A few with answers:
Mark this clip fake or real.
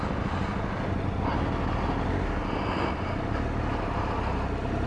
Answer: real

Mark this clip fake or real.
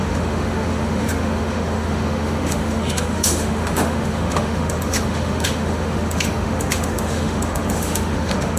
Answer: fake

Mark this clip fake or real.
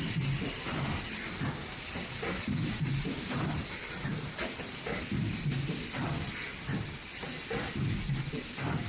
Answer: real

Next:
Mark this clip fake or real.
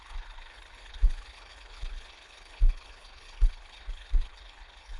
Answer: fake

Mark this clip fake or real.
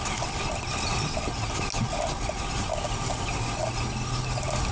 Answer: real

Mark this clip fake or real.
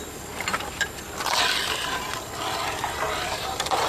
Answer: fake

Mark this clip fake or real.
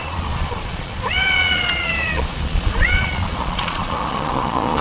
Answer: fake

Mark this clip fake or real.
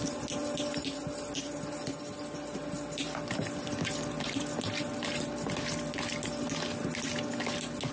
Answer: real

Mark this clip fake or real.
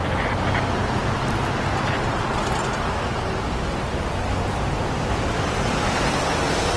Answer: real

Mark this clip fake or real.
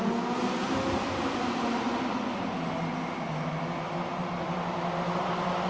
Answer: real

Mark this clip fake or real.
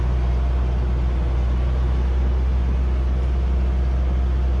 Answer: real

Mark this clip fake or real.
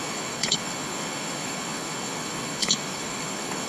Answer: fake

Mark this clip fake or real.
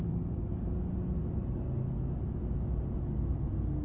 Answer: real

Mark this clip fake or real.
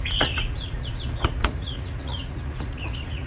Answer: fake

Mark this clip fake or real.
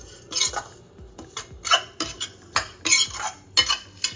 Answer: real